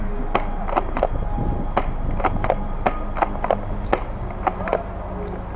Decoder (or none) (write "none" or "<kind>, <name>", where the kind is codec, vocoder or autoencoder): none